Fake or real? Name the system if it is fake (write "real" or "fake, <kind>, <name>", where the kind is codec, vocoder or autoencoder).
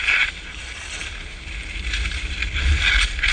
real